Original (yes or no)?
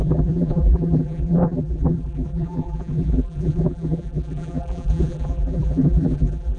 no